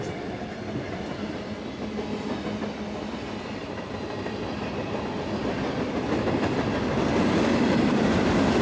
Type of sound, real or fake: real